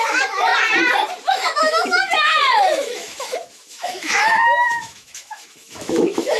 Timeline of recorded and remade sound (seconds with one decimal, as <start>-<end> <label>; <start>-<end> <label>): 0.0-0.5 remade; 0.5-1.2 recorded; 1.2-6.4 remade